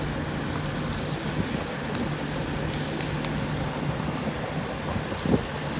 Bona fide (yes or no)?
yes